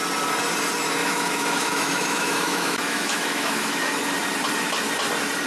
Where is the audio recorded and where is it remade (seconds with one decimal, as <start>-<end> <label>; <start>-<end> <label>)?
0.0-1.0 recorded; 1.0-3.9 remade; 3.9-5.5 recorded

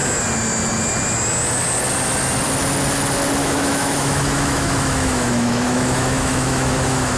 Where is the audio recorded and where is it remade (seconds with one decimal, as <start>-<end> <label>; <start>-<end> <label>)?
0.0-3.4 recorded; 3.4-7.2 remade